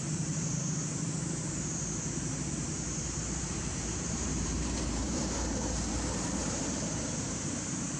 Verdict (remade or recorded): remade